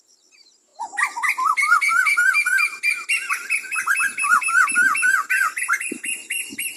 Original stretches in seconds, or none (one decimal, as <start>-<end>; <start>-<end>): 0.0-6.8